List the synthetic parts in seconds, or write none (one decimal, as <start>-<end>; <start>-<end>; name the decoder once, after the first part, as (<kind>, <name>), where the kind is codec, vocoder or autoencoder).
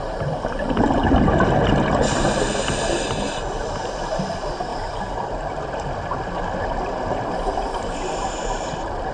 none